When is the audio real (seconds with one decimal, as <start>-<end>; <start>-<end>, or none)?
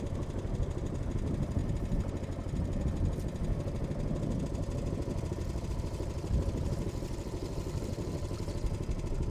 1.6-5.7